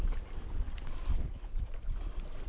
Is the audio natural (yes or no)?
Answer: yes